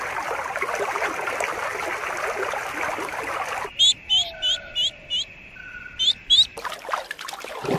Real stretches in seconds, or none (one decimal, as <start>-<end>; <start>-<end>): 0.0-7.8